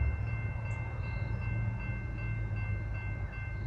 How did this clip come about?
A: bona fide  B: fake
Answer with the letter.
A